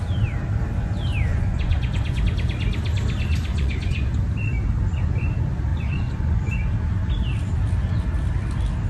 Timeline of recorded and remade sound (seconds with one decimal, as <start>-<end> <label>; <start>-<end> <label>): 0.0-1.3 recorded; 1.3-2.2 remade; 2.2-3.5 recorded; 3.5-4.2 remade; 4.2-5.7 recorded; 5.7-6.5 remade; 6.5-8.9 recorded